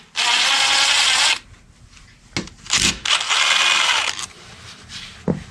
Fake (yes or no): no